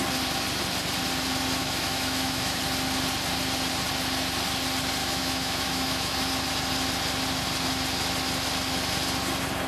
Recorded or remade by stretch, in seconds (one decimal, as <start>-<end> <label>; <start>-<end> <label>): 0.0-1.6 recorded; 1.6-2.6 remade; 2.6-5.0 recorded; 5.0-6.3 remade; 6.3-9.7 recorded